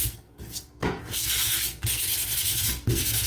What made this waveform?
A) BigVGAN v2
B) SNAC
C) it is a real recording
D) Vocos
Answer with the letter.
B